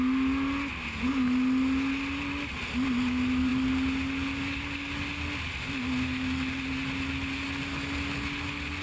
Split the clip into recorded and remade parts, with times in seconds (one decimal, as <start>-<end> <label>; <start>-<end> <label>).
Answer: 0.0-8.8 recorded